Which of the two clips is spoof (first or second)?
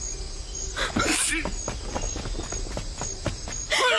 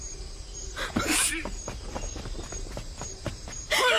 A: second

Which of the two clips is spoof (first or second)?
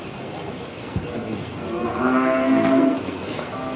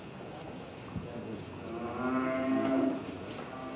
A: first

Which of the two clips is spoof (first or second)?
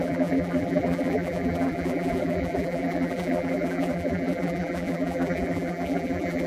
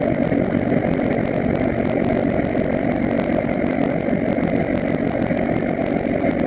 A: first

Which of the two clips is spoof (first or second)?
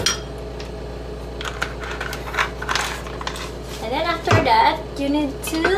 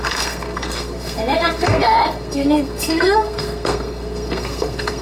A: second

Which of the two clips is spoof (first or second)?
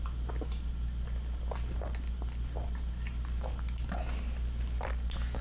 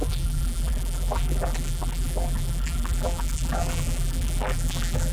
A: second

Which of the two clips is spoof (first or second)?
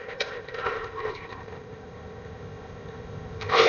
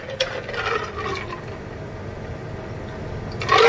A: first